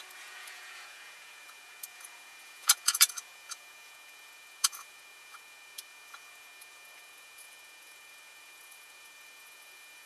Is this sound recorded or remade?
remade